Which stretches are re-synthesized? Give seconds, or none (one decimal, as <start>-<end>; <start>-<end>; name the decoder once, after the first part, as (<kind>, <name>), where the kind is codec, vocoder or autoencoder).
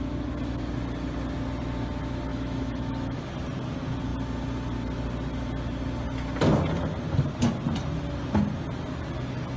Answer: 2.3-3.3 (autoencoder, DAC-VAE)